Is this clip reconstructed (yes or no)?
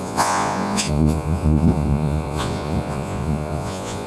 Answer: yes